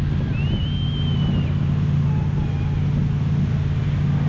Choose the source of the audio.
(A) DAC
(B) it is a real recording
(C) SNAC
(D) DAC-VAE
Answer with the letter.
B